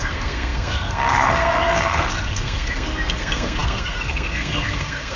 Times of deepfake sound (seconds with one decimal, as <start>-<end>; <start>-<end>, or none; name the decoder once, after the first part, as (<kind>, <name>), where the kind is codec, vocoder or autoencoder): 0.0-5.2 (codec, SNAC)